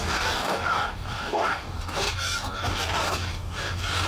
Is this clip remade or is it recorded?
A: remade